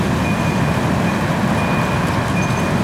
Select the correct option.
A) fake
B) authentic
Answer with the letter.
B